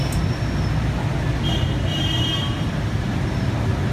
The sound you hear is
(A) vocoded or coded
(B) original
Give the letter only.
B